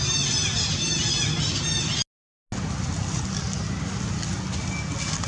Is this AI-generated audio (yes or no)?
no